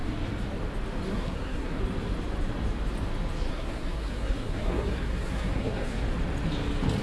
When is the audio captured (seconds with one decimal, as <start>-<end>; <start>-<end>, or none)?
0.0-1.1; 1.8-3.5; 6.0-7.0